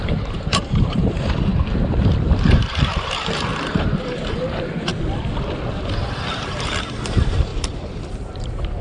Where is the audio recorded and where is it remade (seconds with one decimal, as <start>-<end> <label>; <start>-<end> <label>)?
0.0-3.5 remade; 3.5-4.3 recorded; 4.3-4.9 remade; 4.9-5.7 recorded; 5.7-8.8 remade